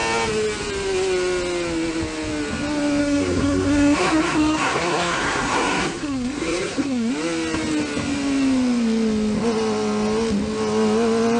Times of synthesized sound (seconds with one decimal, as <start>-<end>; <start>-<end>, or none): 3.0-7.1